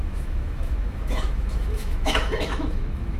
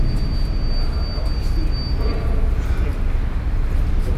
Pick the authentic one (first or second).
second